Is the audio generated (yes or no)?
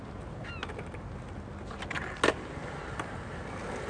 no